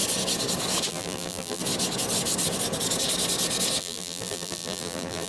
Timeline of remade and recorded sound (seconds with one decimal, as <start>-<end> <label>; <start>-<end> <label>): 0.0-0.9 recorded; 0.9-1.6 remade; 1.6-3.8 recorded; 3.8-5.3 remade